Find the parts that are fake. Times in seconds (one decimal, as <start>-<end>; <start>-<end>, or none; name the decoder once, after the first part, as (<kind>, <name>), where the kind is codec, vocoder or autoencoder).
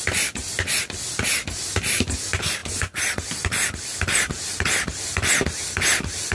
none